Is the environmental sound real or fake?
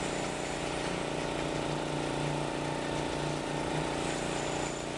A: real